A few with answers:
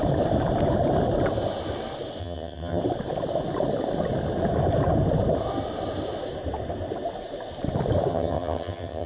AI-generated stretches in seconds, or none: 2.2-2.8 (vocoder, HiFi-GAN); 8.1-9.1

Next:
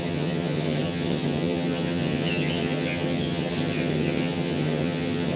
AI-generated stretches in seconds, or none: 0.0-5.4 (vocoder, HiFi-GAN)

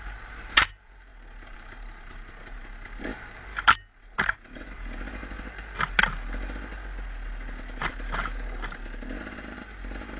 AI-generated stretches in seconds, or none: none

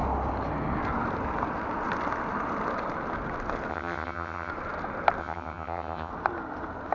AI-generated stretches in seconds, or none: 3.7-4.5 (vocoder, HiFi-GAN); 5.2-6.1